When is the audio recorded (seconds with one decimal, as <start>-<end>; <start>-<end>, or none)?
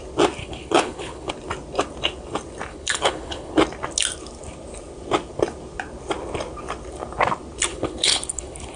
0.0-0.4; 1.3-2.7; 3.5-7.7